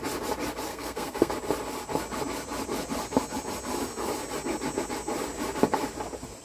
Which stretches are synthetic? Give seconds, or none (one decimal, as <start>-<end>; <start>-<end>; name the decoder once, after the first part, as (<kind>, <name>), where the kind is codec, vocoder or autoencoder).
0.7-1.3 (codec, SNAC)